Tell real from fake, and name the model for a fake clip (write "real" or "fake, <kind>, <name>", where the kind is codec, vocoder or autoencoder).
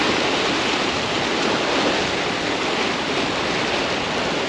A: real